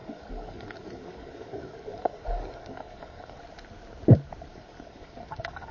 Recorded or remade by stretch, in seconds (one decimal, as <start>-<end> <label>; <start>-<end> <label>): 0.0-3.4 remade; 3.4-4.5 recorded; 4.5-5.7 remade